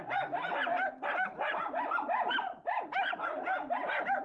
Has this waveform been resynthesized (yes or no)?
no